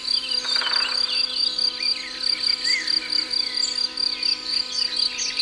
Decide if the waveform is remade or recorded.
recorded